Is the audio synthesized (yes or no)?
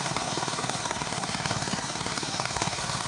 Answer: yes